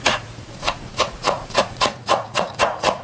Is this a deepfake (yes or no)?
yes